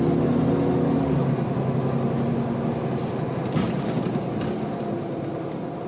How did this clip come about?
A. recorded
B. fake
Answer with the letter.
A